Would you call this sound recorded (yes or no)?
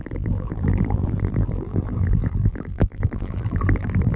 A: no